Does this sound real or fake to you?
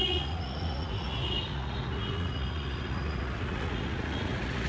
fake